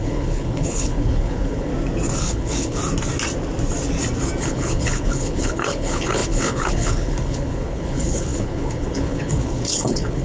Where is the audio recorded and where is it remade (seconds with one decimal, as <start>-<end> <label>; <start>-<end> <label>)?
0.0-1.7 remade; 1.7-2.2 recorded; 2.2-2.8 remade; 2.8-4.4 recorded; 4.4-10.2 remade

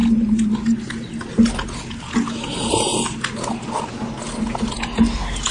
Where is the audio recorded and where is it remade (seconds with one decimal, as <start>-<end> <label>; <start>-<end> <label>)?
0.0-5.5 recorded

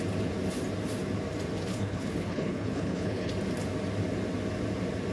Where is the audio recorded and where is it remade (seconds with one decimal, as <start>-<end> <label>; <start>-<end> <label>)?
0.0-1.7 recorded; 1.7-3.3 remade; 3.3-5.1 recorded

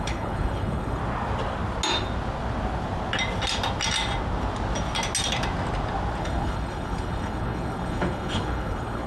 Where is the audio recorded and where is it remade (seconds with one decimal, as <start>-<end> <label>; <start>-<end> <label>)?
0.0-1.0 remade; 1.0-6.2 recorded; 6.2-9.1 remade

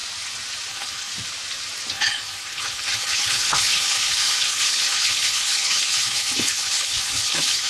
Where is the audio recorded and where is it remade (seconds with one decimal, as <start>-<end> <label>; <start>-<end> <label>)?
0.0-0.7 recorded; 0.7-1.1 remade; 1.1-1.9 recorded; 1.9-7.7 remade

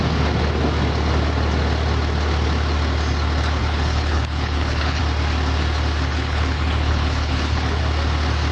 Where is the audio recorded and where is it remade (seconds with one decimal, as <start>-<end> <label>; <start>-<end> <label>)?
0.0-3.6 recorded; 3.6-5.0 remade; 5.0-6.1 recorded; 6.1-7.8 remade; 7.8-8.5 recorded